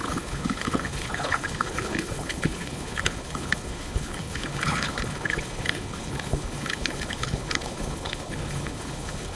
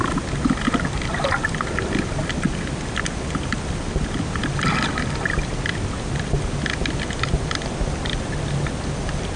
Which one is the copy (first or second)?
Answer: first